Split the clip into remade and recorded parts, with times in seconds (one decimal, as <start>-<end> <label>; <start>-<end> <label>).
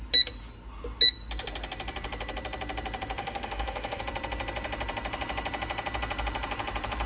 0.0-3.2 recorded; 3.2-4.0 remade; 4.0-7.1 recorded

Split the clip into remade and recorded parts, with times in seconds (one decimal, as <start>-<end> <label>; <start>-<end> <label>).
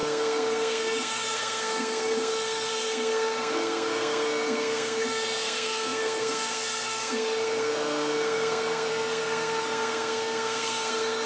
0.0-11.3 remade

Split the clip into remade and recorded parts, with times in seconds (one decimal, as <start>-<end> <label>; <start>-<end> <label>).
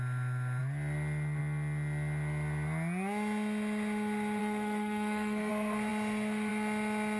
0.0-4.4 recorded; 4.4-5.5 remade; 5.5-7.2 recorded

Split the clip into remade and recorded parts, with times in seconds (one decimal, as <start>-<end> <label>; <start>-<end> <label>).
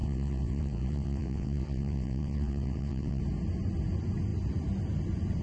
0.0-3.2 remade; 3.2-5.4 recorded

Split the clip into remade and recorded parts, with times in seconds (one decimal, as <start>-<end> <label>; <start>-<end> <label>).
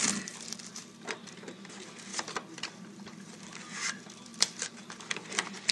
0.0-1.3 remade; 1.3-2.1 recorded; 2.1-3.4 remade; 3.4-4.3 recorded; 4.3-4.9 remade; 4.9-5.7 recorded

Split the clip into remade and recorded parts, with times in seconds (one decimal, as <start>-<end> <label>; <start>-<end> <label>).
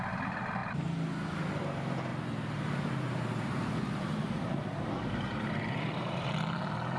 0.0-2.1 recorded; 2.1-6.3 remade; 6.3-7.0 recorded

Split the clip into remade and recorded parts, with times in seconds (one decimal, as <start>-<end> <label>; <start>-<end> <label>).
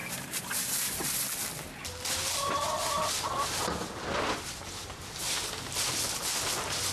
0.0-6.9 recorded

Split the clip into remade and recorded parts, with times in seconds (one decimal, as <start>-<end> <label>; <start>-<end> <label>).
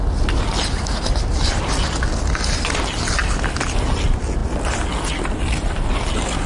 0.0-6.5 recorded